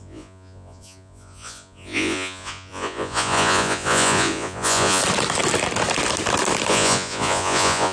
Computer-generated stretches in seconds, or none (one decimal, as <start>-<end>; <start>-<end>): 0.0-5.0; 6.7-7.9